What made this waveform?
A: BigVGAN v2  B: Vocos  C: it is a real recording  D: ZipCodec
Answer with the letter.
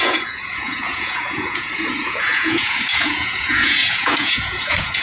B